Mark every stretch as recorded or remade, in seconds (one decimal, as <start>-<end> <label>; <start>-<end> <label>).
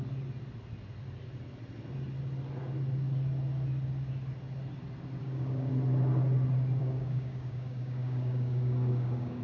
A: 0.0-5.2 recorded; 5.2-5.7 remade; 5.7-6.8 recorded; 6.8-9.4 remade